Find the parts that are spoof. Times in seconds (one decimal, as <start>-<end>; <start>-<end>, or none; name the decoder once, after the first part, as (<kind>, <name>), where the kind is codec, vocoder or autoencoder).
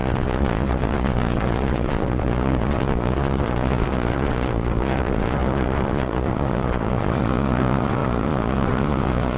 0.0-9.4 (vocoder, Vocos)